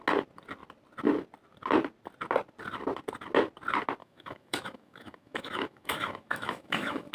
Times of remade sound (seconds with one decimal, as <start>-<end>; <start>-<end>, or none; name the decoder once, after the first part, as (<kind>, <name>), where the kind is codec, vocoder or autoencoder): 4.0-7.1 (autoencoder, DAC-VAE)

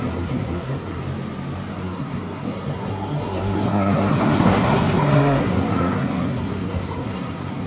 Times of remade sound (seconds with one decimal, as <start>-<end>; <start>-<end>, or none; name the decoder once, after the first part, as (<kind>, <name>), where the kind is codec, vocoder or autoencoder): 0.0-1.0 (codec, SNAC); 1.7-7.7

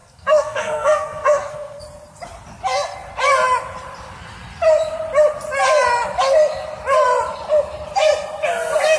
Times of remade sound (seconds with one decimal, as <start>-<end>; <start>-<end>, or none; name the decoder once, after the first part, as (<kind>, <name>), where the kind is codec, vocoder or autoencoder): 0.0-1.8 (codec, SNAC)

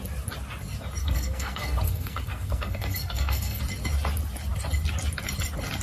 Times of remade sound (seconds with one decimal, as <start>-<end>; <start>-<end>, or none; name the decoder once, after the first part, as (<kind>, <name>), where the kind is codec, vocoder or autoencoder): 1.0-3.6 (codec, SNAC)

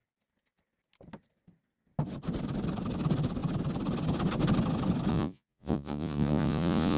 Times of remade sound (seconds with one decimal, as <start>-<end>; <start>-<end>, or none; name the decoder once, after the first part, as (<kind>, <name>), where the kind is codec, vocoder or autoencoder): 5.1-7.0 (vocoder, Vocos)

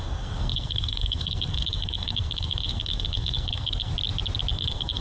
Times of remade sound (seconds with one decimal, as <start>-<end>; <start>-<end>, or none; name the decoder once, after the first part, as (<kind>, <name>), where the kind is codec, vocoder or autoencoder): 0.0-3.9 (codec, SNAC); 4.5-5.0